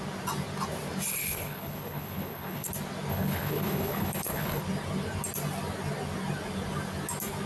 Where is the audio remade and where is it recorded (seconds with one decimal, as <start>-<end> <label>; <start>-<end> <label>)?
0.0-1.1 recorded; 1.1-2.7 remade; 2.7-3.1 recorded; 3.1-4.6 remade; 4.6-7.5 recorded